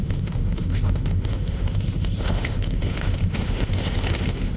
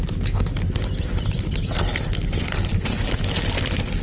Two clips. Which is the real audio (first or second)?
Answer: second